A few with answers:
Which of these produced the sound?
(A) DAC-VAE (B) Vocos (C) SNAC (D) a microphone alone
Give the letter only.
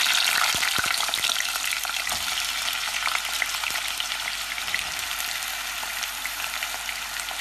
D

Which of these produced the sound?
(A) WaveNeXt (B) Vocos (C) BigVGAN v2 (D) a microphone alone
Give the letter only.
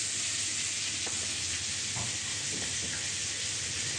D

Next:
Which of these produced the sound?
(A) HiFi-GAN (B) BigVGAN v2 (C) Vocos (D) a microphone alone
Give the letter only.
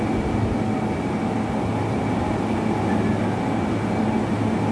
D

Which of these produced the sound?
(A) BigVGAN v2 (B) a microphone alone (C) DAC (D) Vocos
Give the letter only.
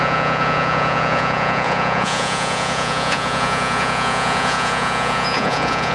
D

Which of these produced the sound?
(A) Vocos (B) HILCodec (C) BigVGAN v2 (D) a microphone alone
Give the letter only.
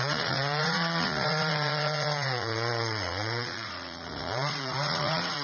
A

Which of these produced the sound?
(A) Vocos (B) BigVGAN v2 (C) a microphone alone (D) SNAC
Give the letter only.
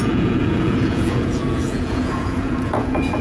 A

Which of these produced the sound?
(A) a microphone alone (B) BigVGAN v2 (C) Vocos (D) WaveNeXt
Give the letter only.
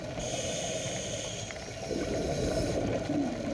A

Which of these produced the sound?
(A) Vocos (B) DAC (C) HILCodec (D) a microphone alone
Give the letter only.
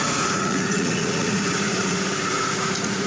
A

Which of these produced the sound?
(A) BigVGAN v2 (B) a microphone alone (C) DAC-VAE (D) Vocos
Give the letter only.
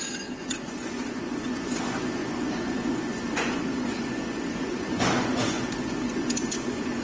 D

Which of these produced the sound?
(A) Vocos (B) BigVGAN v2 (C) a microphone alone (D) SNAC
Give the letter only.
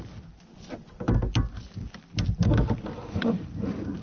C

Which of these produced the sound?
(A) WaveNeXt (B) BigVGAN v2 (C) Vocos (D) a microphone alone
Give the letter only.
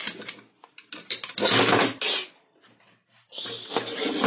D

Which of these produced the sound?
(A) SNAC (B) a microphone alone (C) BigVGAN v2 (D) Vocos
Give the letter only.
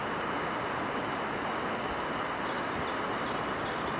B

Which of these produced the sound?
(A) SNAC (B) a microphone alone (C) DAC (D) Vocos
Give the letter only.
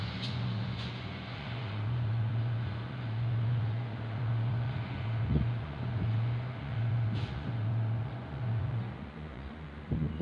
D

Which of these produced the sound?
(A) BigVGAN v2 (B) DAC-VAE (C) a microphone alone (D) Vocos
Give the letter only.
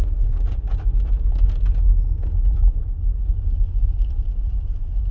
C